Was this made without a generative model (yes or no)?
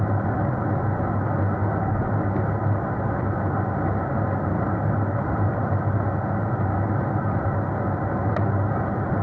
yes